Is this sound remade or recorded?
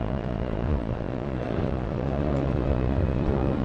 remade